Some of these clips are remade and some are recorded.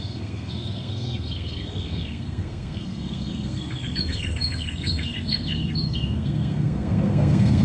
remade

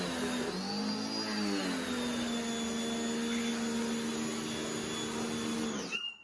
recorded